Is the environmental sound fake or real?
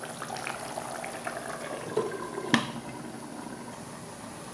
real